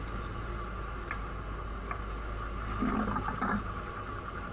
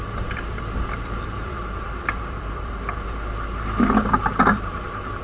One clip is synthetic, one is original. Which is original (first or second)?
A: first